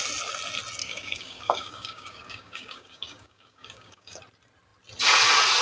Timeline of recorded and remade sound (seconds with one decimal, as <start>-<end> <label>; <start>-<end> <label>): 0.0-0.8 recorded; 0.8-4.2 remade; 4.2-5.6 recorded